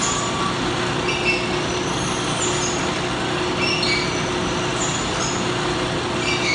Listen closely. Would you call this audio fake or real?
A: real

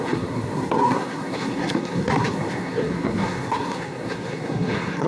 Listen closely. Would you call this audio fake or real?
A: fake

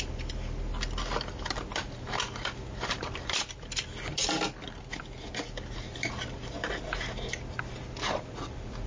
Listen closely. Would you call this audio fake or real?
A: real